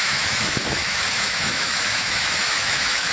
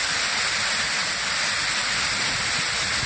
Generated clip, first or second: first